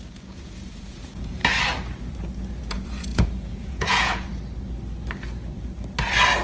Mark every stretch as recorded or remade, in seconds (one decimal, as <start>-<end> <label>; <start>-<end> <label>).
0.0-1.4 remade; 1.4-2.5 recorded; 2.5-4.3 remade; 4.3-6.4 recorded